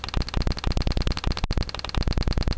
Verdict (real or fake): real